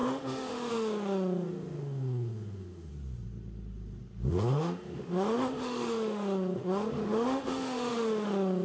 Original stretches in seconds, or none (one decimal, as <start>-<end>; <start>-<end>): 2.9-4.3

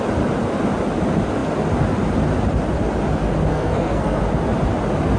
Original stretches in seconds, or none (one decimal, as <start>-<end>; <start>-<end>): 0.0-3.5; 4.2-5.2